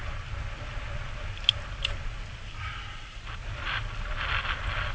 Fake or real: real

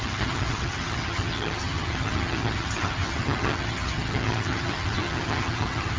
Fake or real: fake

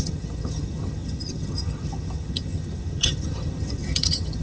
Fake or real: fake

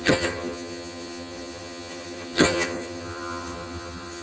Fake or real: fake